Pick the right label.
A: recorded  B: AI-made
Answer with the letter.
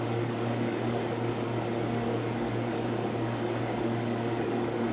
B